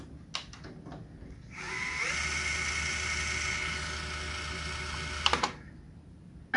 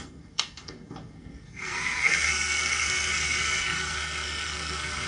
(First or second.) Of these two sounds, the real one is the first